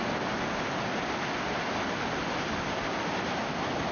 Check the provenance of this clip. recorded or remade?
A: recorded